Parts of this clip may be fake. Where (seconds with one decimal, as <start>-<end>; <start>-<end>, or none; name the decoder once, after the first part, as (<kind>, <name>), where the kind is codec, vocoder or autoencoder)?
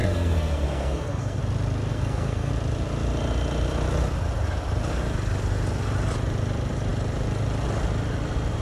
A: 0.0-1.4 (codec, SNAC); 1.9-2.5